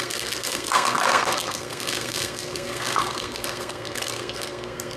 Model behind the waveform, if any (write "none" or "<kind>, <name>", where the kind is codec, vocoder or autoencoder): codec, SNAC